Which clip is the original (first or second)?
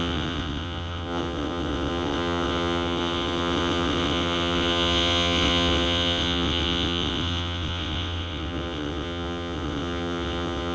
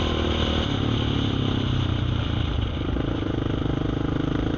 second